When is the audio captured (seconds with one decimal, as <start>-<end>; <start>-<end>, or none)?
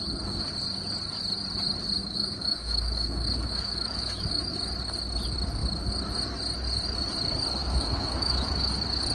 0.0-2.0; 4.5-7.6; 8.7-9.1